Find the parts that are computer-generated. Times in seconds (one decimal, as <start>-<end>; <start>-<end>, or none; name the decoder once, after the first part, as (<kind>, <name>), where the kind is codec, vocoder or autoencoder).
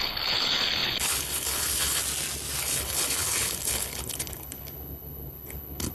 0.0-2.0 (codec, HILCodec); 2.6-5.9